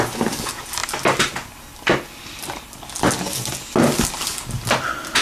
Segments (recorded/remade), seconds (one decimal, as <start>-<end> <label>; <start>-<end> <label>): 0.0-5.2 recorded